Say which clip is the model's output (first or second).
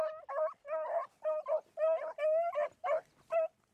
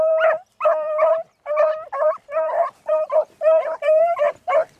second